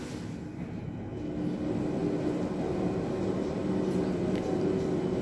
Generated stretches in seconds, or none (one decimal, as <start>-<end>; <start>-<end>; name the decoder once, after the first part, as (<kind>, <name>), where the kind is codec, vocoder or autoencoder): none